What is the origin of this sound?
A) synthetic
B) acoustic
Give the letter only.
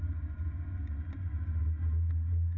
B